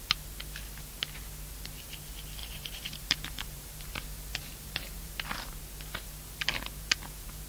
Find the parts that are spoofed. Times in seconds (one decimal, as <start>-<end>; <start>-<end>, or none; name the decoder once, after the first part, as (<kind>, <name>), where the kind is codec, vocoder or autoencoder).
2.4-5.2 (vocoder, BigVGAN v2)